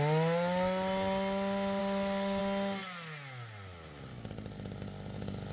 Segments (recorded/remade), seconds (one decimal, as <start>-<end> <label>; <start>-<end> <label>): 0.0-1.8 recorded; 1.8-2.4 remade; 2.4-5.5 recorded